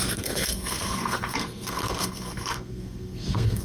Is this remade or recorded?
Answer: remade